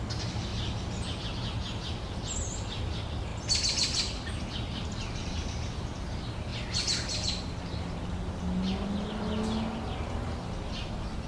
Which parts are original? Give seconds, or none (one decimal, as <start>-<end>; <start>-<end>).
0.0-11.3